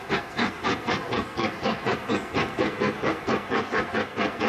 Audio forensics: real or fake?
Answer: fake